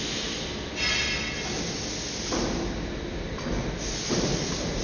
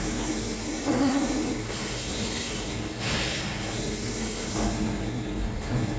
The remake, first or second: second